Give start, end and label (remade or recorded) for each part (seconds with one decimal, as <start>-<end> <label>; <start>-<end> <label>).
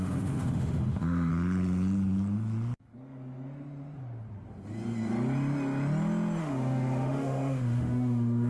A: 0.0-1.3 remade; 1.3-6.4 recorded; 6.4-8.5 remade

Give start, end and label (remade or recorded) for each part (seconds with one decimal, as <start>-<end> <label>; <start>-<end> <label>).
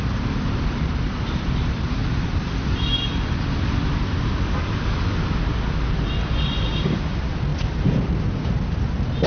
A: 0.0-2.0 remade; 2.0-7.1 recorded; 7.1-9.3 remade